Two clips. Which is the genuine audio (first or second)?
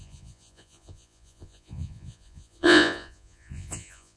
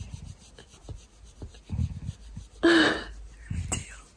second